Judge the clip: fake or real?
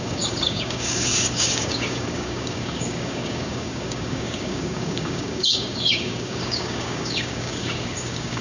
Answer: fake